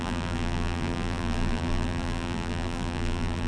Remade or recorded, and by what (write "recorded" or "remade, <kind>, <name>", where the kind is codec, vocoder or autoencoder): remade, vocoder, BigVGAN v2